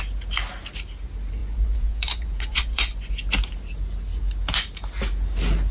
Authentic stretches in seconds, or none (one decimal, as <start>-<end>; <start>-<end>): 0.0-1.4; 3.1-5.7